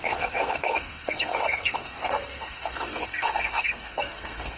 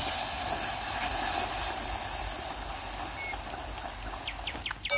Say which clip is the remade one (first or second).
first